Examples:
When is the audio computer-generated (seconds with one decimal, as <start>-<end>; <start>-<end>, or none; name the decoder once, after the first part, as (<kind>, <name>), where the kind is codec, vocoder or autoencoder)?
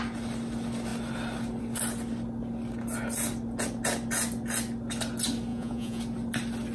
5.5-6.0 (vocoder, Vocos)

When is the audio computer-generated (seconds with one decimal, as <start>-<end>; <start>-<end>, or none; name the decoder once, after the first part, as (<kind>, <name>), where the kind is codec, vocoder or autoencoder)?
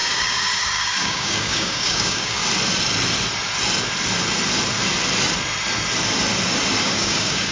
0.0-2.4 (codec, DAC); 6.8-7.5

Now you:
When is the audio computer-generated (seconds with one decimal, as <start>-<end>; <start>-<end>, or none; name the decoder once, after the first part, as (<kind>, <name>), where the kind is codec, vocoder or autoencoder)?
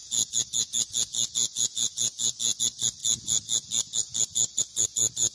none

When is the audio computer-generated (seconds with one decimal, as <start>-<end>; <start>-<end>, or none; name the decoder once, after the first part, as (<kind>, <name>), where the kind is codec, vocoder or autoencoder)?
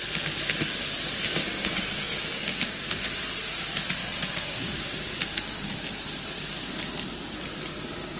1.4-3.2 (codec, DAC); 4.0-5.7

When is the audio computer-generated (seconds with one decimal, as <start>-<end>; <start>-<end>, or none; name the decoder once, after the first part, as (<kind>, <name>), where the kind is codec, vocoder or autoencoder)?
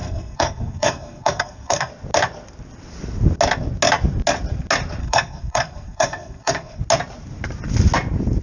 0.0-1.9 (codec, SNAC); 5.0-6.8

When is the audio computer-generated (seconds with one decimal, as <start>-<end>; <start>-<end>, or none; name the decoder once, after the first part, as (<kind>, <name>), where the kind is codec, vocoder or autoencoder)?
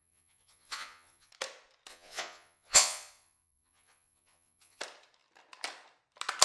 0.0-1.3 (vocoder, Vocos); 1.9-4.8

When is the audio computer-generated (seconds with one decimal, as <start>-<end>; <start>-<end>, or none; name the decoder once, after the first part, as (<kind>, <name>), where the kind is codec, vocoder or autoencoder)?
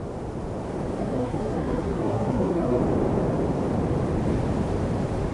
1.0-2.8 (codec, SNAC)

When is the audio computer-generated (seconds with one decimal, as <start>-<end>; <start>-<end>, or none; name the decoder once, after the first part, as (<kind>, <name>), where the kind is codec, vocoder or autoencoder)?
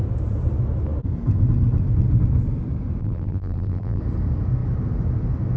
3.0-4.0 (vocoder, BigVGAN v2)